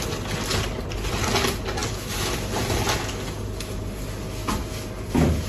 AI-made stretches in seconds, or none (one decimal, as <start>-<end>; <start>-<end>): none